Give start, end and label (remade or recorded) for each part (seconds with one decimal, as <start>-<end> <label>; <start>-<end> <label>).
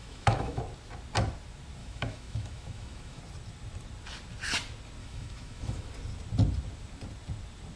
0.0-0.6 remade; 0.6-1.8 recorded; 1.8-3.2 remade; 3.2-5.0 recorded; 5.0-5.9 remade; 5.9-7.8 recorded